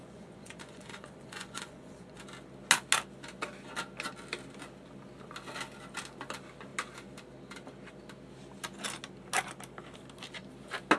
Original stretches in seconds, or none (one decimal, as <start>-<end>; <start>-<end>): 2.2-11.0